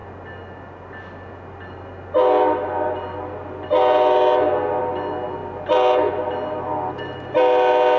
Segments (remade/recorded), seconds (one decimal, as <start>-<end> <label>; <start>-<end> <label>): 0.0-8.0 recorded